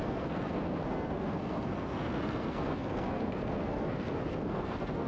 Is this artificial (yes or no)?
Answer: yes